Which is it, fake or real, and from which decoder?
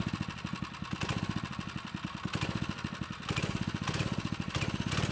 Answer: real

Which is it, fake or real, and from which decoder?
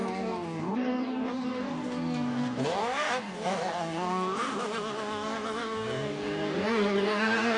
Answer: fake, codec, DAC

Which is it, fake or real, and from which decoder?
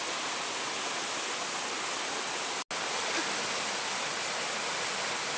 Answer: real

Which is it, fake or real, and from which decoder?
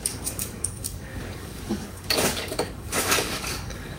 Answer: fake, codec, DAC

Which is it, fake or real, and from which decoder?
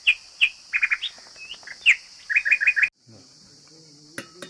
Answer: real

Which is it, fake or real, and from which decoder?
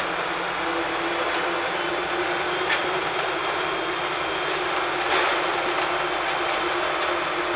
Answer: real